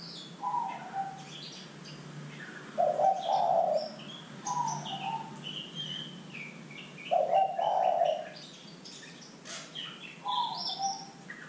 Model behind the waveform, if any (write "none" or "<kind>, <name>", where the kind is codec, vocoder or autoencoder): none